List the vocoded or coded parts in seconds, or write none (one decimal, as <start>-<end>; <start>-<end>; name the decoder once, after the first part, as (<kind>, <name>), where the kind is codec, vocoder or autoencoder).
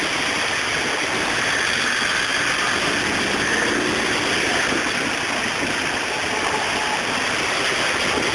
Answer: none